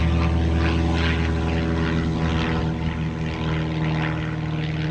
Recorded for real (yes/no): yes